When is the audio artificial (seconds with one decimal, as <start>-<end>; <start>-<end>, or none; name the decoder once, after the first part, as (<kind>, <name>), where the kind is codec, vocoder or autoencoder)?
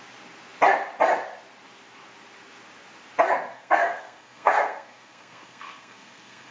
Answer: 3.5-6.5 (codec, SNAC)